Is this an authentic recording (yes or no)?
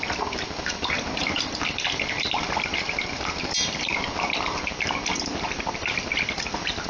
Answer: yes